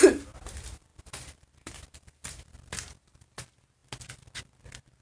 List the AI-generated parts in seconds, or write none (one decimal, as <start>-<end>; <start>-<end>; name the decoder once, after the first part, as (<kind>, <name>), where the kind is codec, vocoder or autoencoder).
none